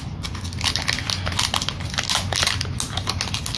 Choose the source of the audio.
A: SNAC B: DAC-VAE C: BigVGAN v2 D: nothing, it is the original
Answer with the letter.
D